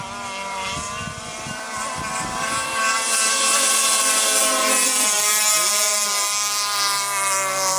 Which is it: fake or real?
real